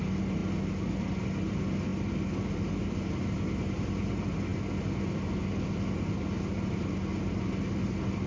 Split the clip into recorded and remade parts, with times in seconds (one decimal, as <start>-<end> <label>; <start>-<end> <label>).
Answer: 0.0-8.3 recorded

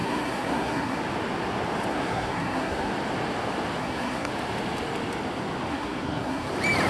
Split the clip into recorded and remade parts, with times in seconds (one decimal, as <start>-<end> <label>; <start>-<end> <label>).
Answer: 0.0-1.0 remade; 1.0-1.9 recorded; 1.9-2.9 remade; 2.9-3.8 recorded; 3.8-4.3 remade; 4.3-5.7 recorded; 5.7-6.5 remade; 6.5-6.9 recorded

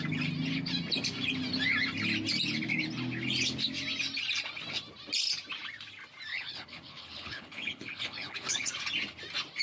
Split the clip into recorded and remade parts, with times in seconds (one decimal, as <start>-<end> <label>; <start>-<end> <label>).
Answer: 0.0-6.3 recorded; 6.3-8.7 remade; 8.7-9.6 recorded